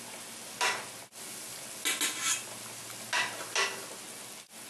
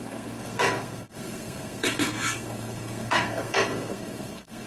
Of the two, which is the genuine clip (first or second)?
first